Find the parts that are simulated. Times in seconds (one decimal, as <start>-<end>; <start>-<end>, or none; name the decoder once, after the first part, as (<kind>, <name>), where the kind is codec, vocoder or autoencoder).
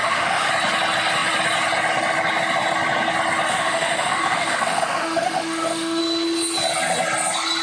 0.0-0.5 (autoencoder, DAC-VAE); 3.5-6.0